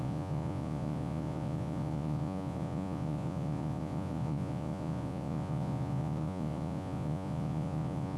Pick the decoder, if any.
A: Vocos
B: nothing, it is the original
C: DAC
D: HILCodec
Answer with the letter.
A